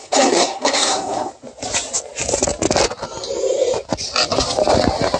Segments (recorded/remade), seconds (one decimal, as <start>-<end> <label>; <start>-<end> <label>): 0.0-1.3 remade; 1.3-5.2 recorded